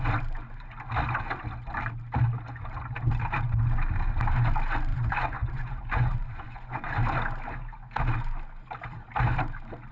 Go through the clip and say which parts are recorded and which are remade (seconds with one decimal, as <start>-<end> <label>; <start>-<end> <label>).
0.0-4.9 recorded; 4.9-6.9 remade; 6.9-9.9 recorded